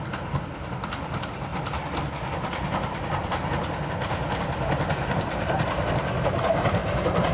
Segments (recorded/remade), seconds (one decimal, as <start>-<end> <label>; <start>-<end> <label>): 0.0-7.3 recorded